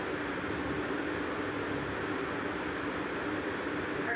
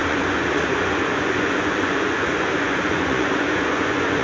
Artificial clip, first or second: second